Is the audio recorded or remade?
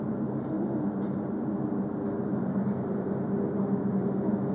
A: recorded